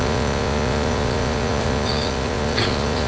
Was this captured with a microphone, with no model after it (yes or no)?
no